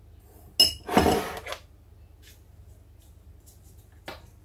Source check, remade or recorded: recorded